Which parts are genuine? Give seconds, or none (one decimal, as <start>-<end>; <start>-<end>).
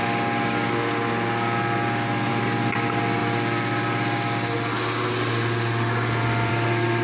0.0-7.0